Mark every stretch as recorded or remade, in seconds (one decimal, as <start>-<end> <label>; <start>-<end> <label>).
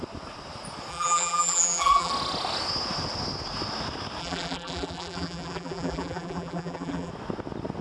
0.0-0.9 recorded; 0.9-2.1 remade; 2.1-4.2 recorded; 4.2-7.1 remade; 7.1-7.8 recorded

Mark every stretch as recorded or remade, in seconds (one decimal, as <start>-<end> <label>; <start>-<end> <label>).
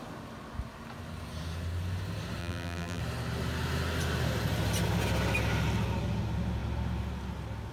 0.0-2.4 recorded; 2.4-3.0 remade; 3.0-7.7 recorded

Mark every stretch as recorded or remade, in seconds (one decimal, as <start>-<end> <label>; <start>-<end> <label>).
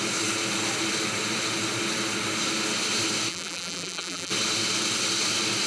0.0-3.3 recorded; 3.3-4.3 remade; 4.3-5.7 recorded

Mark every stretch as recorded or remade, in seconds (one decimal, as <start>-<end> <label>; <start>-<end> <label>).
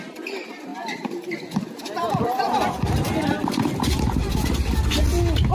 0.0-0.7 recorded; 0.7-4.0 remade; 4.0-5.5 recorded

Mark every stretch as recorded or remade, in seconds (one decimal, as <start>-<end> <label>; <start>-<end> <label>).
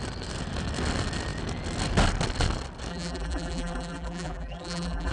0.0-2.9 recorded; 2.9-5.1 remade